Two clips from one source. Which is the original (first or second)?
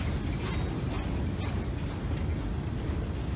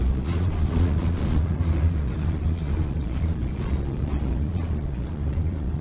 first